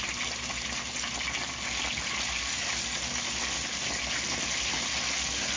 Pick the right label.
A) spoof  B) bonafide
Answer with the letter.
B